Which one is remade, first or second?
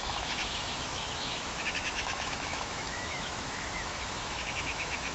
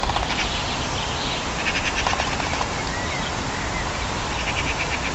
first